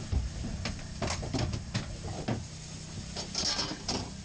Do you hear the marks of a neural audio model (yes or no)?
no